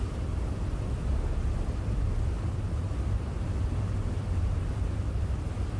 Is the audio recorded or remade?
recorded